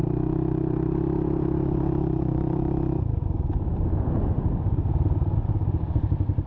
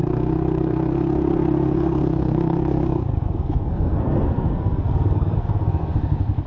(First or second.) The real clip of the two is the first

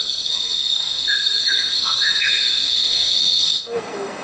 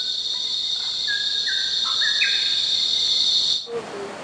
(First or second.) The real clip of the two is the second